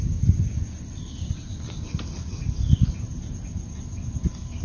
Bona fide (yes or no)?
yes